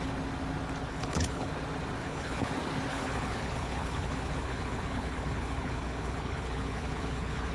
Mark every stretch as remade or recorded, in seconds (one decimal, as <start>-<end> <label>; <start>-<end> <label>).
0.0-0.9 recorded; 0.9-1.5 remade; 1.5-2.0 recorded; 2.0-2.5 remade; 2.5-2.9 recorded; 2.9-7.5 remade